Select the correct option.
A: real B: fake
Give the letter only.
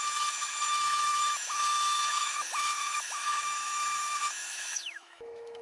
B